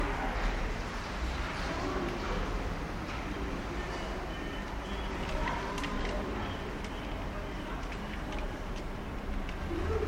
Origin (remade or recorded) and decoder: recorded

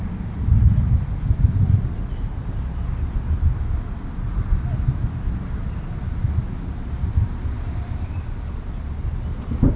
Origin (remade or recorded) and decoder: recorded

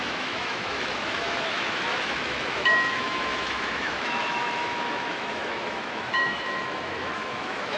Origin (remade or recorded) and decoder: remade, autoencoder, DAC-VAE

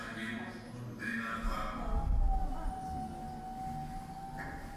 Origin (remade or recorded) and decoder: recorded